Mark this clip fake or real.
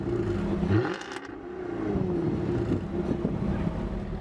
real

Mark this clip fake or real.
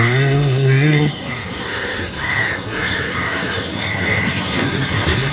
fake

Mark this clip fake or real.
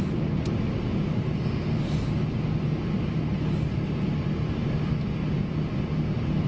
real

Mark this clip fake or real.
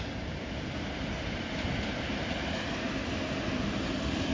real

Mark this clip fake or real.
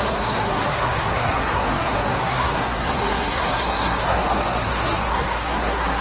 fake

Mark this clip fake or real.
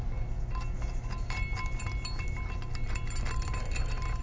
real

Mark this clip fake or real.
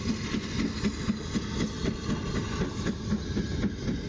real